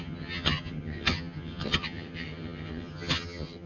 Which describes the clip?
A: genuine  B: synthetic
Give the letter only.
B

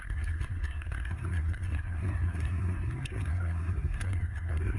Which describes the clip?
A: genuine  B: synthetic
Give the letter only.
B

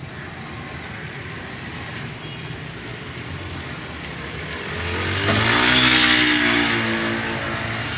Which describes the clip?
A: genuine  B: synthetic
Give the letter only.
A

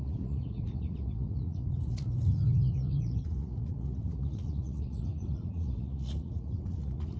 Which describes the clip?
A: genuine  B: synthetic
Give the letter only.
B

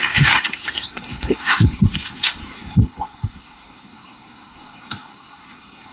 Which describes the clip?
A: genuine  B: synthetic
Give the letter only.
B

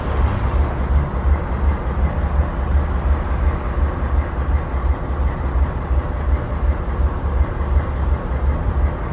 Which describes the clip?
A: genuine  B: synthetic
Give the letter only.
A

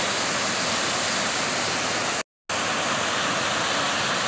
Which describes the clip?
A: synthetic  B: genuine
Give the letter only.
B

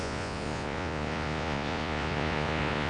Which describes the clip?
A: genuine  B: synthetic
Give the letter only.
B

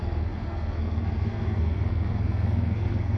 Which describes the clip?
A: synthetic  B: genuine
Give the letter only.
A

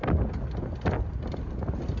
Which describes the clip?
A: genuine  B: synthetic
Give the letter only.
B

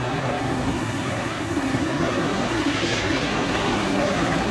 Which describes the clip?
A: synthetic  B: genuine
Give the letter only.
A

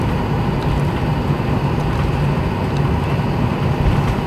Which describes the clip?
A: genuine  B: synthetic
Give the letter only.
A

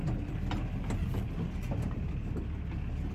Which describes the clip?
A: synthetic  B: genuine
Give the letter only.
B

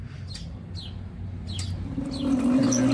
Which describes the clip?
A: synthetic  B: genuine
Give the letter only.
B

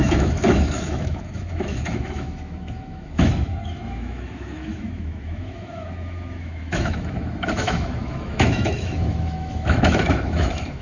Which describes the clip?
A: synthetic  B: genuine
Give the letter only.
A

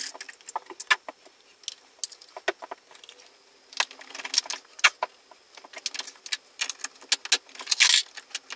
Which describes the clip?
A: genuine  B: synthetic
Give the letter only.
A